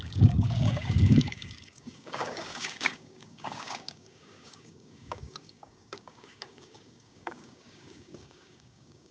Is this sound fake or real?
fake